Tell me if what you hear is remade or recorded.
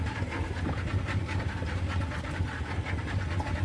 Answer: recorded